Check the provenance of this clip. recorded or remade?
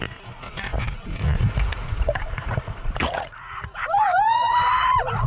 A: remade